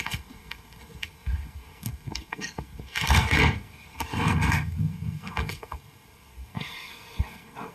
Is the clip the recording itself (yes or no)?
no